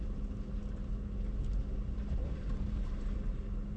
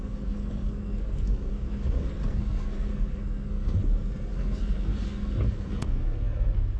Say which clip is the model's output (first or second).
second